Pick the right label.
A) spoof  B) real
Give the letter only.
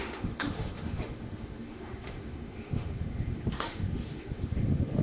A